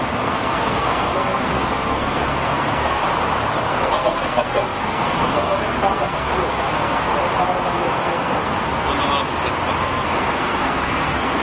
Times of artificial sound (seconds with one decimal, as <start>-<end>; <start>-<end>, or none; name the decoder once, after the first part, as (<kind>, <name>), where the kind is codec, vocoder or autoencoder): 0.0-3.0 (codec, SNAC); 3.7-7.1; 7.7-8.9; 9.8-11.4